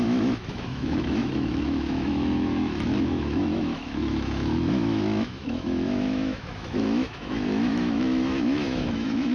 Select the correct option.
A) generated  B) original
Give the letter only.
A